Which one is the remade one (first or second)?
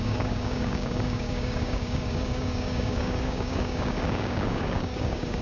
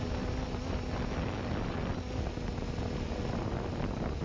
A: first